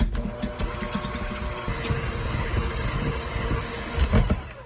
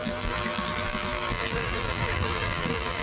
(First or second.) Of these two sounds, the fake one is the second